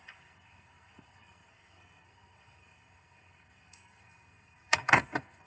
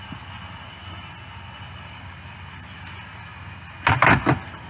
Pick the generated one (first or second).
first